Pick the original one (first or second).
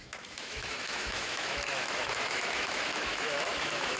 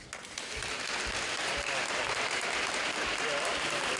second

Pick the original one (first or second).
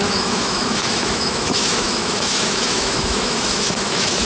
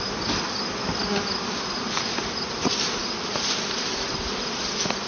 second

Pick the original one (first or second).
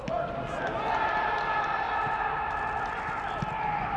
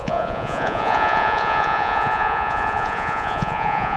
first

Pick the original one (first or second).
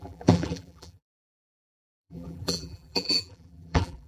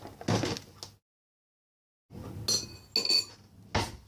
second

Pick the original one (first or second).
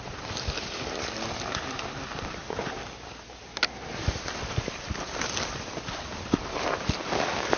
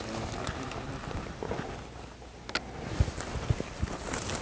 second